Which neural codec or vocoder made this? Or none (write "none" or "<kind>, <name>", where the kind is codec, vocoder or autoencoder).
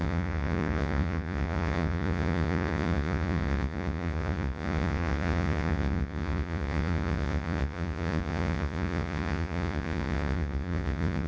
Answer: vocoder, Vocos